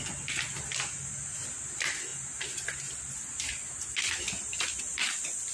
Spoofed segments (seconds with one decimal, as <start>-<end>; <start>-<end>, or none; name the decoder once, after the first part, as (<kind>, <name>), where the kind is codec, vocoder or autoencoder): none